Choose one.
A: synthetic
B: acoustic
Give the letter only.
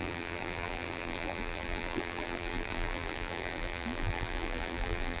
A